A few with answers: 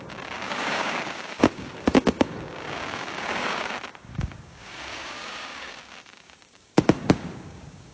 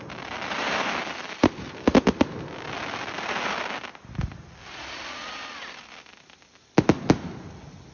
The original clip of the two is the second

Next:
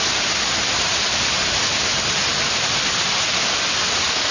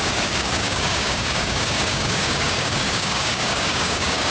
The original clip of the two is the first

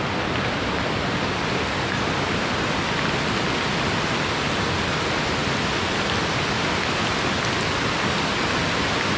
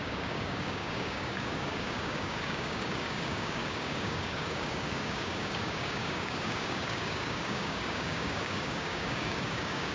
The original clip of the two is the first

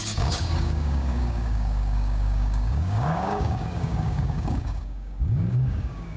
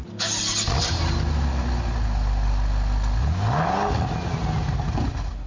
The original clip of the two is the second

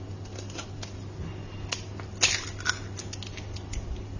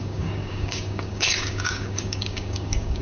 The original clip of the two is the first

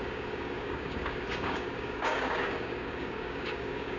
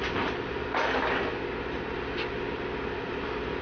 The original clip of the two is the second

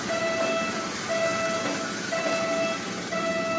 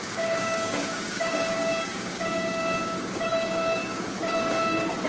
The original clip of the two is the first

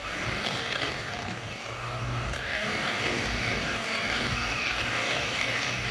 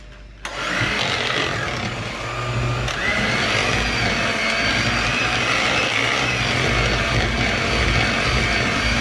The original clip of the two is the second